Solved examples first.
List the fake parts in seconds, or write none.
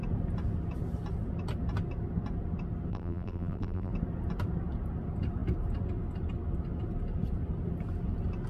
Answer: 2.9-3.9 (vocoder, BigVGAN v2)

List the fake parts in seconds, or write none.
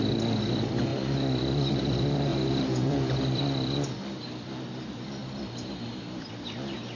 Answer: 2.3-3.4 (vocoder, BigVGAN v2); 5.2-6.3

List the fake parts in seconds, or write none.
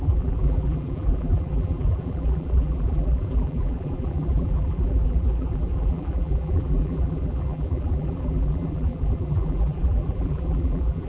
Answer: 0.0-11.1 (vocoder, BigVGAN v2)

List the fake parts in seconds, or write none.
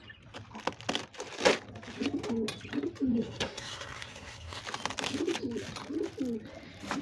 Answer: 3.1-4.6 (codec, SNAC)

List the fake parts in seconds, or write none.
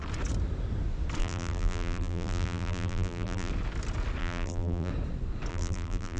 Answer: 1.2-3.5 (vocoder, BigVGAN v2); 4.2-4.9; 5.5-6.2